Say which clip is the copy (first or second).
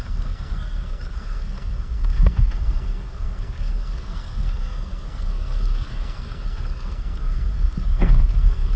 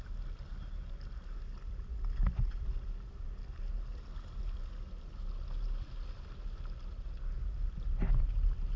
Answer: first